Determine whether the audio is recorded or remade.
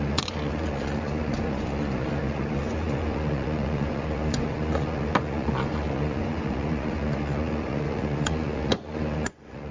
remade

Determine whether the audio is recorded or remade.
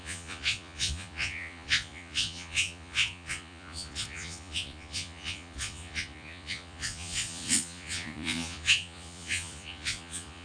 remade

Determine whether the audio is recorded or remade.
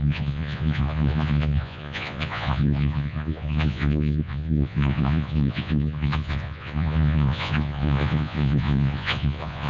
remade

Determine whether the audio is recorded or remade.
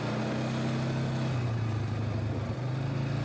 recorded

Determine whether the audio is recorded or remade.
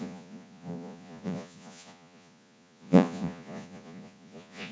remade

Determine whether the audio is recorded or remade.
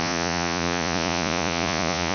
remade